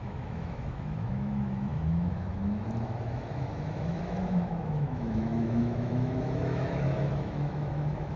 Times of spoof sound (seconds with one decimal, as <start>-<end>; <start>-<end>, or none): 0.0-8.2